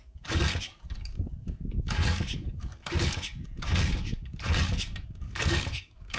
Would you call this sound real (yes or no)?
no